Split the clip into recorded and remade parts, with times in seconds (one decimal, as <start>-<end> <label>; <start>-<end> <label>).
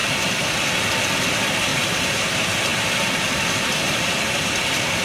0.0-1.7 recorded; 1.7-2.3 remade; 2.3-3.8 recorded; 3.8-4.4 remade; 4.4-5.0 recorded